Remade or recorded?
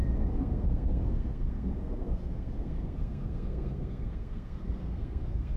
remade